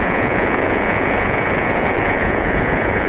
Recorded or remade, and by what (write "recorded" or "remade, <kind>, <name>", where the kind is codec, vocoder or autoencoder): remade, vocoder, Vocos